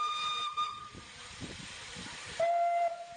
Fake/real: fake